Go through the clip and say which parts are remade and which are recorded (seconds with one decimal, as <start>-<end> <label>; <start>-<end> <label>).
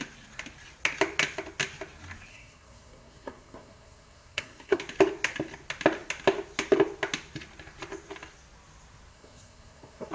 0.0-2.3 recorded; 2.3-4.8 remade; 4.8-9.1 recorded; 9.1-10.1 remade